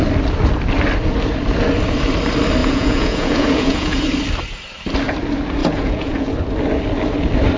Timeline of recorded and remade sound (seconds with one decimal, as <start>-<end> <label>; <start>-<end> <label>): 0.0-2.6 recorded; 2.6-4.0 remade; 4.0-5.6 recorded; 5.6-6.3 remade; 6.3-7.6 recorded